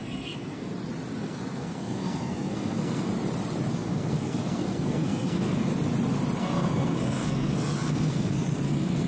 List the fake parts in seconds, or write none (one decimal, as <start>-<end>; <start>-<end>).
0.0-0.7; 1.2-3.1; 3.7-5.7; 6.4-9.1